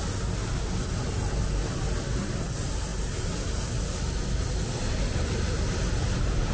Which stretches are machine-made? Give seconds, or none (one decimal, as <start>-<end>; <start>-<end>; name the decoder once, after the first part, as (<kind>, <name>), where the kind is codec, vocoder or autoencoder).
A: none